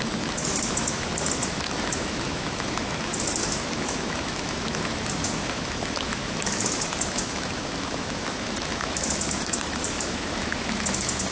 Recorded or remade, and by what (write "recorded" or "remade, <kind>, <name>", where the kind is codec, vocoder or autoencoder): remade, autoencoder, DAC-VAE